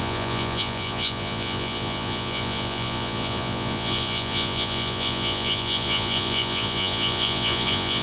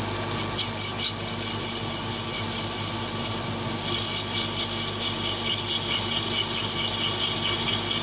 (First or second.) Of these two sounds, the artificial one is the first